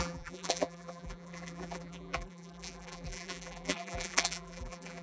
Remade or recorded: remade